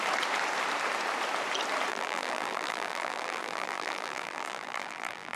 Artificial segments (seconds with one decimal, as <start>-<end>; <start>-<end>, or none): 1.9-5.4